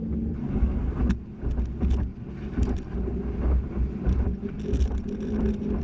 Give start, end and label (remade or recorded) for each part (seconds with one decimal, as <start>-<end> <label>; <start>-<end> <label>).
0.0-0.4 recorded; 0.4-1.0 remade; 1.0-5.8 recorded